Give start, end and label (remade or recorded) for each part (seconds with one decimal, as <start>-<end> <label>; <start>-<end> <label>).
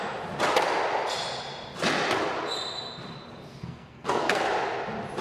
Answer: 0.0-3.5 recorded; 3.5-4.4 remade; 4.4-5.2 recorded